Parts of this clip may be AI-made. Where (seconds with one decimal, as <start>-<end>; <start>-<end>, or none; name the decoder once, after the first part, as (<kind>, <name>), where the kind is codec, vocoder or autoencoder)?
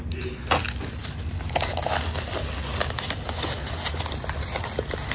none